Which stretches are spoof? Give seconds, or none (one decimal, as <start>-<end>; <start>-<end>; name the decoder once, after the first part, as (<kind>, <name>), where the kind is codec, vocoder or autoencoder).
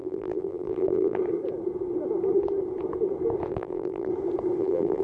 0.0-1.2 (vocoder, BigVGAN v2); 3.5-4.1; 4.6-5.0